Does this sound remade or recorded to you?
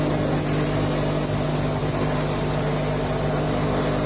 recorded